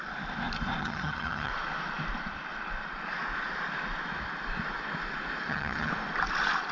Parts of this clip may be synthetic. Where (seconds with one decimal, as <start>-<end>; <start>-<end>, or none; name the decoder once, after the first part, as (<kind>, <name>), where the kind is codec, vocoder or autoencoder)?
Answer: 0.8-1.5 (vocoder, HiFi-GAN); 5.5-5.9